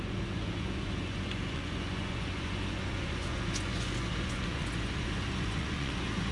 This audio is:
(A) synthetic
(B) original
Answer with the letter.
A